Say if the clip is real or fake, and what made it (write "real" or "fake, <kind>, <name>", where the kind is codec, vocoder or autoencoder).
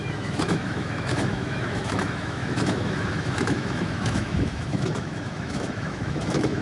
fake, autoencoder, DAC-VAE